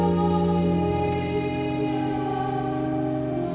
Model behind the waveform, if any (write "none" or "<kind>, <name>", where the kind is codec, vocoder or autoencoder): none